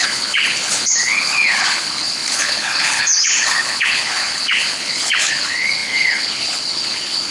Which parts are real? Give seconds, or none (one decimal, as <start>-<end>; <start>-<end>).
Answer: none